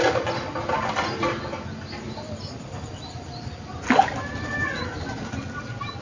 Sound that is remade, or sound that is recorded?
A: recorded